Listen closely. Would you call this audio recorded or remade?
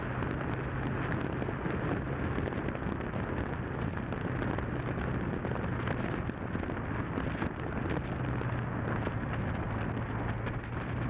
recorded